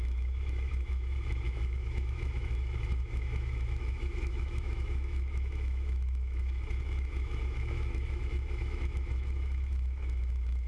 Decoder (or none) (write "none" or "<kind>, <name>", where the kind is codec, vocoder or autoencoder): autoencoder, DAC-VAE